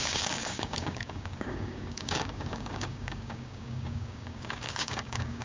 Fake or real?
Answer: fake